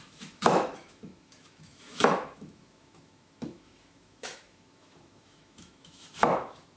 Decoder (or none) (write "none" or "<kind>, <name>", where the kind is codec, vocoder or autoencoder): autoencoder, DAC-VAE